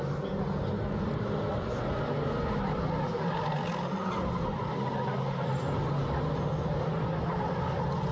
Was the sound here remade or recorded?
recorded